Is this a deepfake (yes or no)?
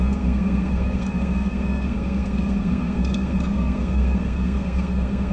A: yes